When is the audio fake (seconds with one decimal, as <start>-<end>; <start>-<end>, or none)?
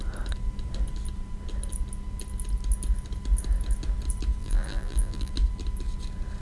4.4-5.3